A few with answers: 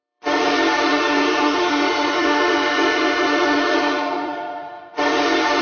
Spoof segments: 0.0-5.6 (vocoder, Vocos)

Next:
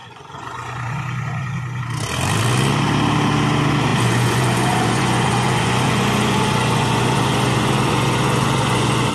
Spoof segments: 0.0-1.8 (vocoder, Vocos); 3.9-9.1

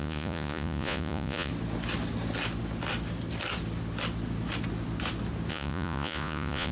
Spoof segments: 0.0-1.5 (vocoder, Vocos); 5.5-6.7

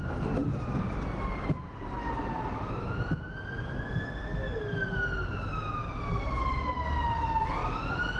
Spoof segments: none

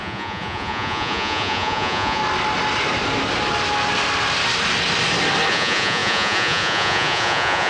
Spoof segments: 0.0-2.2 (vocoder, Vocos); 5.5-7.7

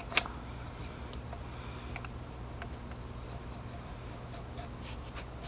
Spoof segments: none

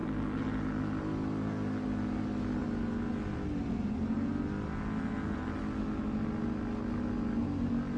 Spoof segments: none

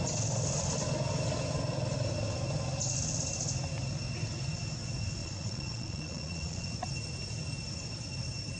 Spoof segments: 5.2-6.7 (vocoder, Vocos)